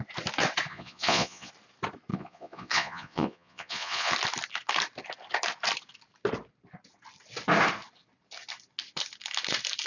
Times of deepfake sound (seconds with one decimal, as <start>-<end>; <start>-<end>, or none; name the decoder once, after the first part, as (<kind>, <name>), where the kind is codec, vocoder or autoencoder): 0.7-1.5 (vocoder, Vocos); 2.1-4.1